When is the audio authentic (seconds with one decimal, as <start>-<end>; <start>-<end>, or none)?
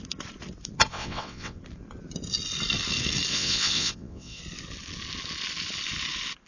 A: 0.0-0.9; 1.6-3.3; 4.4-6.5